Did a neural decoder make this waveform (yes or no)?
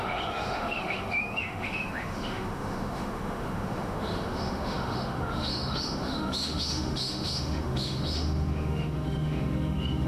yes